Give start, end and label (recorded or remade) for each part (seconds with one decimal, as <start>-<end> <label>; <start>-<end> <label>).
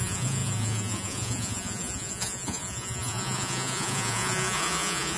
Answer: 0.0-5.2 remade